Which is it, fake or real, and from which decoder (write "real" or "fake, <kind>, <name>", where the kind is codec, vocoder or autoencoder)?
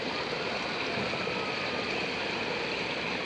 real